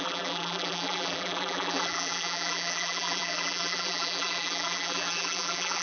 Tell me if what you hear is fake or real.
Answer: fake